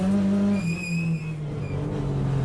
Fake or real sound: real